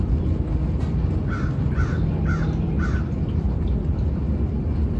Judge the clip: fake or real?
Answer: real